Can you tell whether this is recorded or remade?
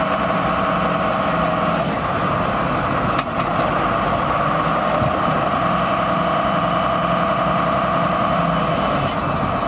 recorded